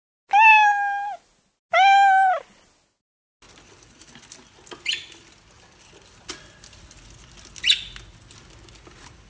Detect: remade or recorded recorded